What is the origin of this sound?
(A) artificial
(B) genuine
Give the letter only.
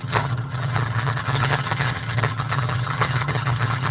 A